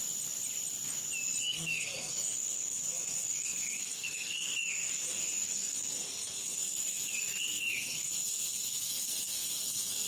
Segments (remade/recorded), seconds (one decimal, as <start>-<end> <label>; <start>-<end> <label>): 0.0-1.4 recorded; 1.4-10.1 remade